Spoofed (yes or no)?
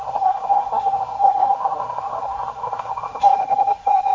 yes